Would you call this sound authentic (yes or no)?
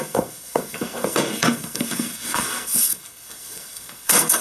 no